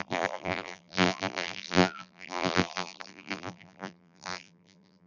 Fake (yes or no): yes